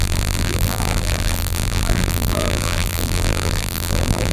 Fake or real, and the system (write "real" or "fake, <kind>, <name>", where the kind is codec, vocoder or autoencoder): fake, vocoder, BigVGAN v2